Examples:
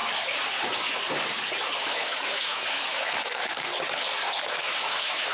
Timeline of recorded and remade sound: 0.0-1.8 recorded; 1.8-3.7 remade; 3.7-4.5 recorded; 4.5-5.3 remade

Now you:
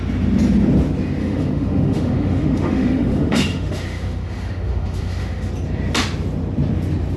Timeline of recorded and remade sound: 0.0-1.2 recorded; 1.2-5.5 remade; 5.5-7.2 recorded

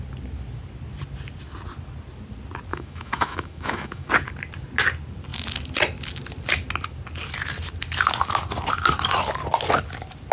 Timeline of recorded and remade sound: 0.0-2.7 recorded; 2.7-4.1 remade; 4.1-10.3 recorded